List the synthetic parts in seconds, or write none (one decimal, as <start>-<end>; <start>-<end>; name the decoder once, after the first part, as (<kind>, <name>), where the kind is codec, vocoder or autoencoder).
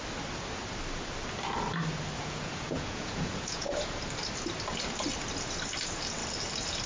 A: 2.2-4.0 (vocoder, Vocos)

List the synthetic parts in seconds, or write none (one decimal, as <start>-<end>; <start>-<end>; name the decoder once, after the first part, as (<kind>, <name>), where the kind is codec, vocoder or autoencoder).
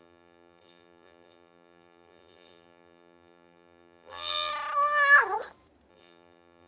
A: 0.0-4.5 (vocoder, BigVGAN v2); 5.9-6.7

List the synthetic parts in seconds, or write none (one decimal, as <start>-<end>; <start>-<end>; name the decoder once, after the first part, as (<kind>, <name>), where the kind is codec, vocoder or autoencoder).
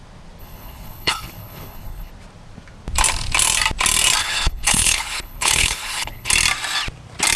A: 0.4-2.1 (codec, HILCodec); 4.2-6.3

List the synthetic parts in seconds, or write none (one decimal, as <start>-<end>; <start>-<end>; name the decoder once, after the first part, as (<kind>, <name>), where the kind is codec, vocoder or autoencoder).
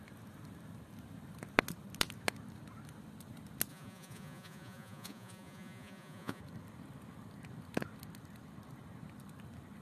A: 3.7-6.4 (vocoder, Vocos)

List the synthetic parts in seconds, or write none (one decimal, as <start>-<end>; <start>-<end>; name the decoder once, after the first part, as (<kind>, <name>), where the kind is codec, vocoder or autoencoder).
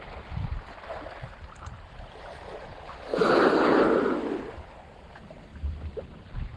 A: none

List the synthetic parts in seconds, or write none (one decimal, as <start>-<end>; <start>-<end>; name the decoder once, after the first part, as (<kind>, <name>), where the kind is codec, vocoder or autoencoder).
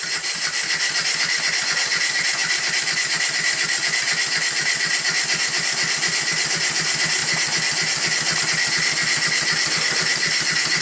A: 2.4-3.0 (vocoder, BigVGAN v2); 3.6-6.4